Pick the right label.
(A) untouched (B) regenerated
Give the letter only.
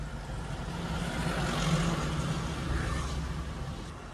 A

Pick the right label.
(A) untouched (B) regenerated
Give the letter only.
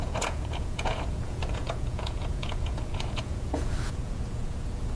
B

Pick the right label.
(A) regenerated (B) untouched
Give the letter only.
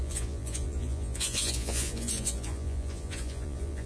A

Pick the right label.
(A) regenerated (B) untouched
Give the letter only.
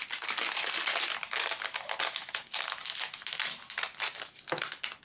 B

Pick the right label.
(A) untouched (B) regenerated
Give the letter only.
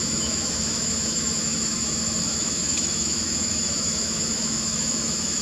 B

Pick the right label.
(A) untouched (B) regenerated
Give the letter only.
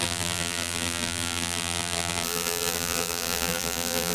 B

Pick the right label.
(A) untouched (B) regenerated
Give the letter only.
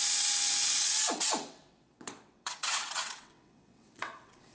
B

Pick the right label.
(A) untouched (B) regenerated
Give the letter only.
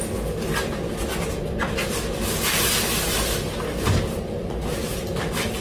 A